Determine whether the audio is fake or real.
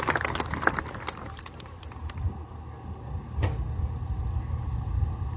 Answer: real